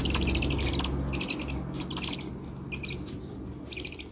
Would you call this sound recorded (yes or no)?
yes